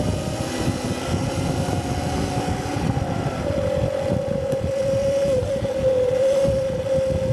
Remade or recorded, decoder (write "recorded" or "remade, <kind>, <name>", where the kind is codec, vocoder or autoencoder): recorded